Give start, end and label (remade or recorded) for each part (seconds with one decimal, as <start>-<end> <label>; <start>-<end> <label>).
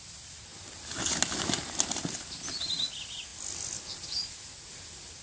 0.0-5.2 recorded